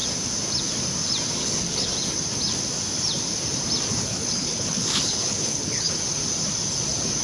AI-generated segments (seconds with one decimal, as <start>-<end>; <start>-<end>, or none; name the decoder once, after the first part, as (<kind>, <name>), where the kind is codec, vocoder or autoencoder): 1.4-1.9 (codec, HILCodec); 3.9-5.9